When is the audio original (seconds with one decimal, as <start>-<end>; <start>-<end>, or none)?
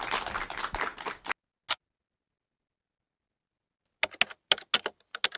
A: 0.0-5.4